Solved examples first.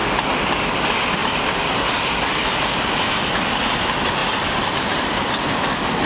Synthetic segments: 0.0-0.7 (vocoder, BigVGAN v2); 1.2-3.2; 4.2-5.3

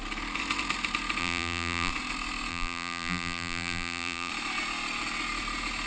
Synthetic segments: 1.2-1.9 (vocoder, BigVGAN v2); 2.5-4.3

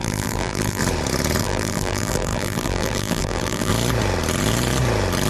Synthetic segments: 0.0-0.8 (vocoder, BigVGAN v2); 1.4-3.7